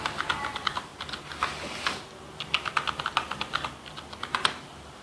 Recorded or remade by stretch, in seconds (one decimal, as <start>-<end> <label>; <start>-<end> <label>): 0.0-0.9 remade; 0.9-3.9 recorded; 3.9-5.0 remade